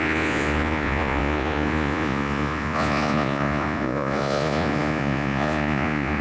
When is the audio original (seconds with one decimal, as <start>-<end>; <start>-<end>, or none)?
none